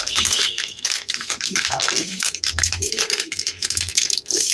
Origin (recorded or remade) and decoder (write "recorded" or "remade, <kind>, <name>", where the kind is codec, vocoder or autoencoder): remade, codec, SNAC